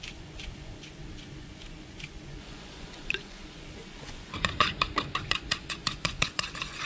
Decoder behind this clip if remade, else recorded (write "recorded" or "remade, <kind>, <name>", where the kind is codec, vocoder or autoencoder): remade, vocoder, Vocos